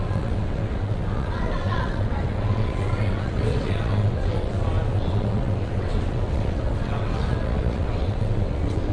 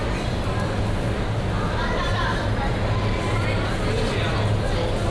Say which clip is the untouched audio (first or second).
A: second